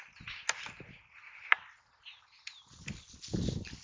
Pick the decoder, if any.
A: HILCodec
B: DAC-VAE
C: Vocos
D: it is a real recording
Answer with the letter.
D